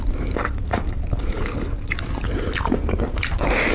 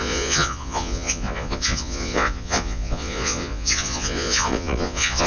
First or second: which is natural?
first